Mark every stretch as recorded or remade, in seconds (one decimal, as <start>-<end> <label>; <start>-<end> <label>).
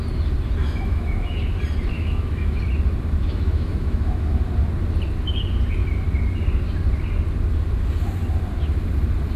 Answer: 0.0-0.6 recorded; 0.6-1.4 remade; 1.4-1.9 recorded; 1.9-2.6 remade; 2.6-3.2 recorded; 3.2-4.4 remade; 4.4-9.4 recorded